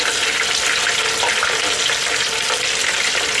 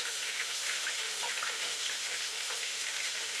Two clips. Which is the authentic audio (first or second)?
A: first